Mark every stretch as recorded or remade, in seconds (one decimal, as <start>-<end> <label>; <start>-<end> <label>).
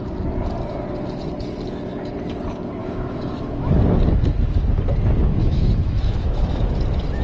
0.0-2.8 recorded; 2.8-3.7 remade; 3.7-5.3 recorded; 5.3-6.8 remade; 6.8-7.2 recorded